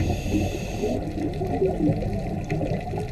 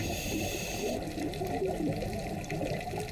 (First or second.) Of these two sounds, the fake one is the second